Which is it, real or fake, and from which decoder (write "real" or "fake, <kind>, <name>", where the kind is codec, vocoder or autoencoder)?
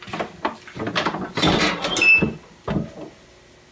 real